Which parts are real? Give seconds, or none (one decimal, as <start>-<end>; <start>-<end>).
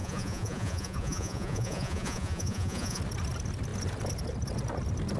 3.0-5.2